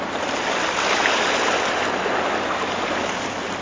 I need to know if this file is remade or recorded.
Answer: recorded